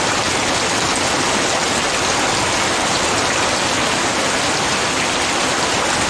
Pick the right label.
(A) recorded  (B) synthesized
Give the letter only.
A